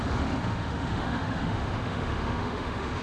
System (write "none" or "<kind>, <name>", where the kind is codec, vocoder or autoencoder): autoencoder, DAC-VAE